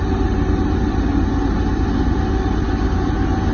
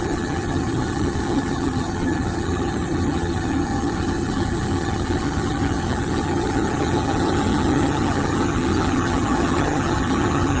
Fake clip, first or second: second